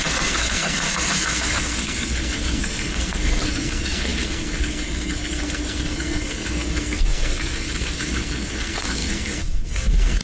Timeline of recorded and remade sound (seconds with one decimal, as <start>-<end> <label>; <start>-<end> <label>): 0.0-10.2 remade